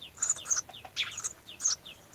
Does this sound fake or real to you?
real